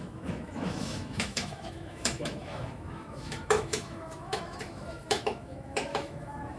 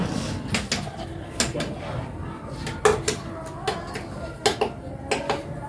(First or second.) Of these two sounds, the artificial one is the first